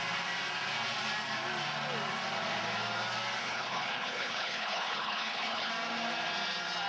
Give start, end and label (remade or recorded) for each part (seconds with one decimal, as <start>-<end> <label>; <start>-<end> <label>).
0.0-3.4 recorded; 3.4-5.7 remade; 5.7-6.9 recorded